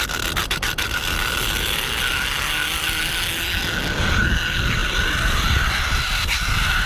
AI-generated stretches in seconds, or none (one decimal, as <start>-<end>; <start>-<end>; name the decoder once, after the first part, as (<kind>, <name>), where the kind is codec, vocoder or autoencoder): 0.4-1.3 (vocoder, BigVGAN v2); 4.8-6.3